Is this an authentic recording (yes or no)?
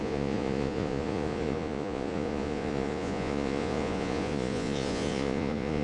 no